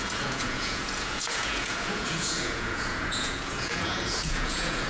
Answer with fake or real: fake